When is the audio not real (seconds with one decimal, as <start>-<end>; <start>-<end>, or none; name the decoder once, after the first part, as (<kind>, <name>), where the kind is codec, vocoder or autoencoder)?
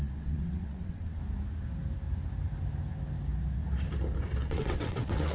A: 0.0-1.2 (vocoder, WaveNeXt); 4.4-5.3